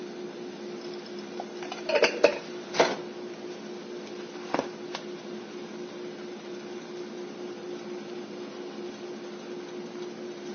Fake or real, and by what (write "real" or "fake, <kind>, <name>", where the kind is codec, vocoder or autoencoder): real